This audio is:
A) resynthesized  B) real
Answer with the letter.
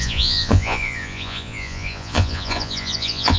A